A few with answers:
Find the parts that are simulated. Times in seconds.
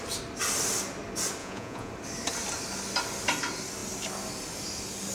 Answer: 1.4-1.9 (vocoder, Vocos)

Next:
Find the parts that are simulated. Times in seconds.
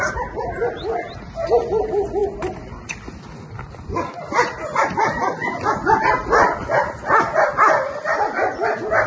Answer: none